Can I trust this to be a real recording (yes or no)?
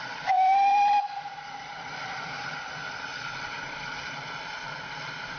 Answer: no